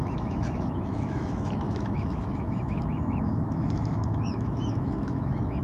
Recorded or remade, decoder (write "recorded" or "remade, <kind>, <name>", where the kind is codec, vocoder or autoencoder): remade, autoencoder, DAC-VAE